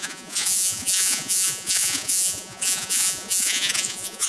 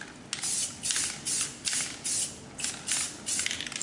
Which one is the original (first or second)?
second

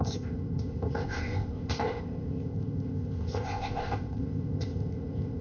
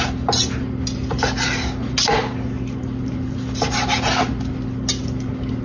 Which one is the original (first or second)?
second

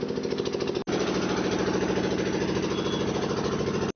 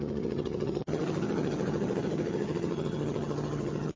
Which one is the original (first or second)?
first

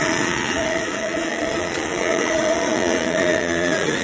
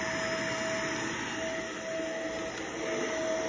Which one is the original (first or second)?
second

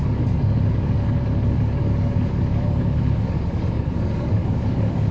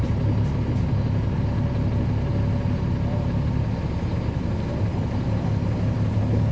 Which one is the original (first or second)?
second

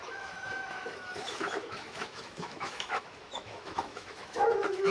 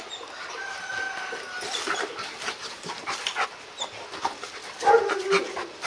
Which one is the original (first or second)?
second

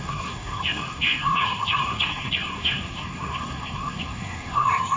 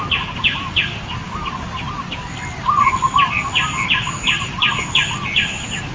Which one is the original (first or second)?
second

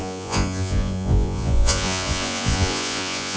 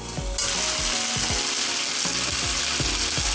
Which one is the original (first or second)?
second